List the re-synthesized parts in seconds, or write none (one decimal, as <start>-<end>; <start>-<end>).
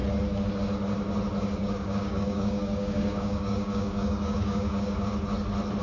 1.6-5.1